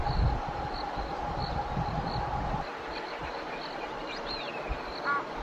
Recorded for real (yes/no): no